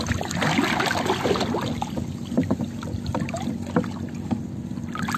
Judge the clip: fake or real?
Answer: real